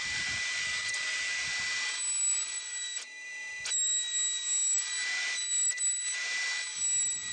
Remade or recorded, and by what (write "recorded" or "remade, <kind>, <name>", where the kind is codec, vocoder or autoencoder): recorded